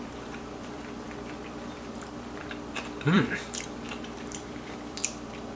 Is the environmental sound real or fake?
fake